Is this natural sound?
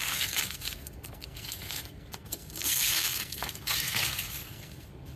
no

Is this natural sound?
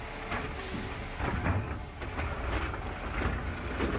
yes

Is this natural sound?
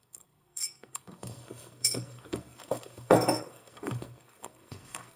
no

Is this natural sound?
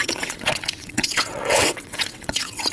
no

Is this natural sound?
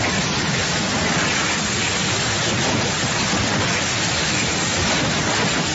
yes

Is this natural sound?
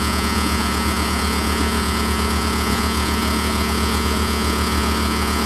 no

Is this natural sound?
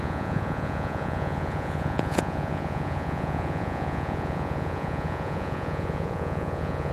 no